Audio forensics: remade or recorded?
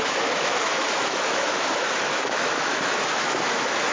remade